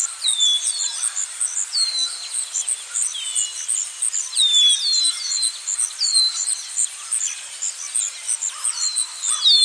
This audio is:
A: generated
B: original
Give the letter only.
B